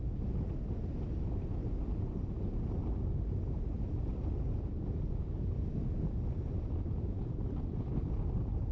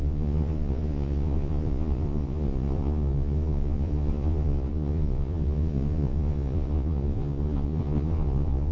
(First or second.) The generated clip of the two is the second